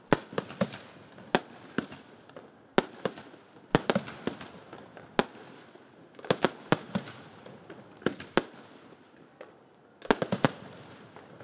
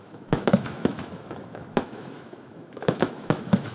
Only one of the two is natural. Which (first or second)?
first